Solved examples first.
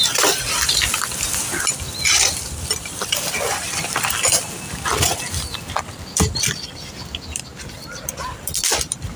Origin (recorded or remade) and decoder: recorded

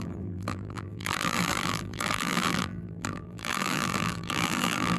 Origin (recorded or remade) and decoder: remade, vocoder, BigVGAN v2